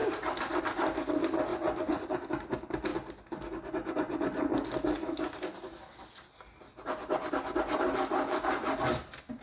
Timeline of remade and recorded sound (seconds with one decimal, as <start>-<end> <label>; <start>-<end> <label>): 0.0-1.5 recorded; 1.5-2.0 remade; 2.0-9.4 recorded